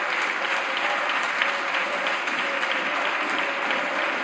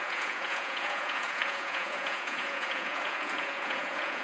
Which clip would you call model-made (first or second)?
second